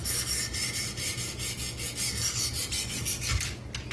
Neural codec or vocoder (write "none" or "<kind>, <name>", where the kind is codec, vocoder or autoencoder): none